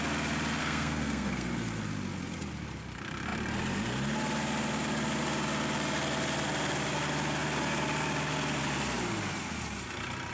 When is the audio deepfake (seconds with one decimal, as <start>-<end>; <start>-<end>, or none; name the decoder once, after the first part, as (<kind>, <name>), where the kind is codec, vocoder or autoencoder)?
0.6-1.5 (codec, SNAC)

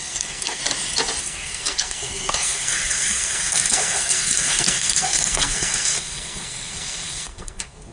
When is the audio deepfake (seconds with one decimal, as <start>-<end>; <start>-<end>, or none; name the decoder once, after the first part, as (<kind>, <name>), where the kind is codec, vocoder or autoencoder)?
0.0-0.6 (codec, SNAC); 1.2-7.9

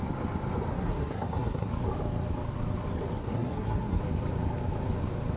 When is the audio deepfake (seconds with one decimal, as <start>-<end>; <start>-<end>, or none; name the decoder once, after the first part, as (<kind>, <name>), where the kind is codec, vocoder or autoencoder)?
0.7-1.7 (codec, SNAC); 3.2-4.0

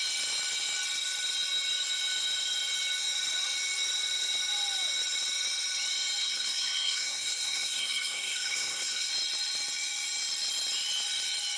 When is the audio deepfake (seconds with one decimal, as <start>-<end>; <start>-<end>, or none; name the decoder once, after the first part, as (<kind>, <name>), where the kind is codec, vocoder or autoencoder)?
6.2-9.1 (codec, SNAC)

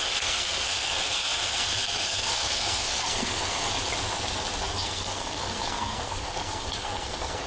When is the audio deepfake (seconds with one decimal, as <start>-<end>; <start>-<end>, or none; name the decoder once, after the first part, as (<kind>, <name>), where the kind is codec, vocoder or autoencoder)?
0.0-3.7 (codec, SNAC); 4.7-7.5

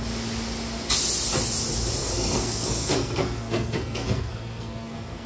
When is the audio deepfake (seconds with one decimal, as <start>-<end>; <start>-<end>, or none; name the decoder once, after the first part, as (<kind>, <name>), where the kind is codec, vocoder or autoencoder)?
2.0-5.3 (codec, SNAC)

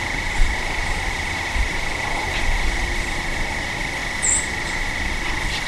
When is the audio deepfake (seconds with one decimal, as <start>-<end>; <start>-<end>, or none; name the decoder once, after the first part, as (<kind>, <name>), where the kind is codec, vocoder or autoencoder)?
none

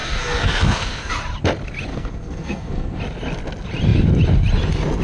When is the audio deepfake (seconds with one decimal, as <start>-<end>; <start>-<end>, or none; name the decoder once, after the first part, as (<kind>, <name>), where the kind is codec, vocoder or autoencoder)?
0.0-1.1 (codec, SNAC); 1.9-3.0